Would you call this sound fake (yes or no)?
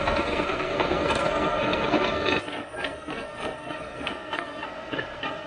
yes